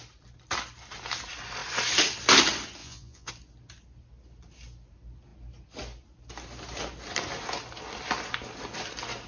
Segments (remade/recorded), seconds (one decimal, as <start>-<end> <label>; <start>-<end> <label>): 0.0-2.8 recorded; 2.8-3.3 remade; 3.3-9.3 recorded